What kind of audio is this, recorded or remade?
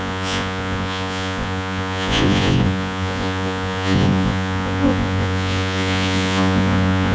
remade